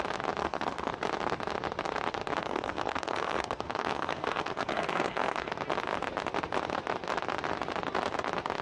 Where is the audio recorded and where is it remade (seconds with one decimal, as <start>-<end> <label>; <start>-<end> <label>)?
0.0-0.4 recorded; 0.4-0.9 remade; 0.9-2.4 recorded; 2.4-5.5 remade; 5.5-8.6 recorded